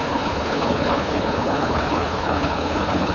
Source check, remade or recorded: remade